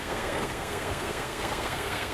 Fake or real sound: fake